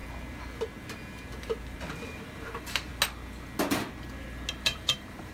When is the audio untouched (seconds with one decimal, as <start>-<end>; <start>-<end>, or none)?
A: 0.0-1.6; 2.9-4.5